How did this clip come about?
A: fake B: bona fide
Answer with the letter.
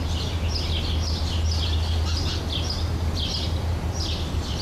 B